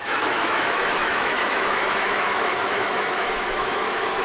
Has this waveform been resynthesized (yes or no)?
yes